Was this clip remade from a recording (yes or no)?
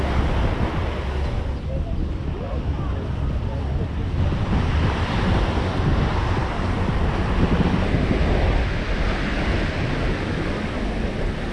no